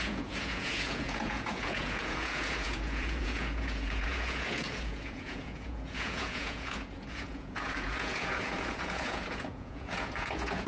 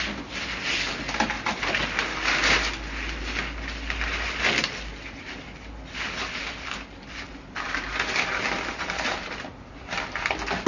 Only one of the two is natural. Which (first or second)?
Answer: second